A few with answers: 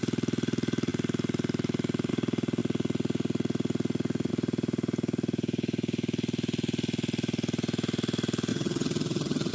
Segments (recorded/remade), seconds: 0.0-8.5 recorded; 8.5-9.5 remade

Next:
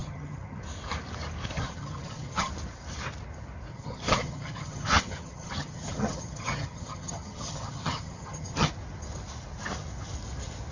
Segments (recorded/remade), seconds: 0.0-0.6 remade; 0.6-1.6 recorded; 1.6-2.5 remade; 2.5-3.7 recorded; 3.7-8.7 remade; 8.7-10.7 recorded

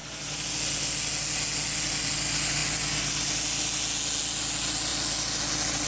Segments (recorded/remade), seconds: 0.0-5.9 recorded

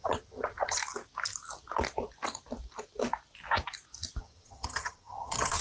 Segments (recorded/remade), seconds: 0.0-0.8 remade; 0.8-4.2 recorded; 4.2-5.6 remade

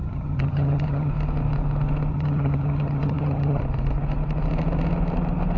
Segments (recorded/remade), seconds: 0.0-1.1 remade; 1.1-2.1 recorded; 2.1-3.6 remade; 3.6-5.6 recorded